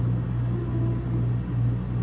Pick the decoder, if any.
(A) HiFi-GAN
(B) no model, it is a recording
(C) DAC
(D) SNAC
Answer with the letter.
B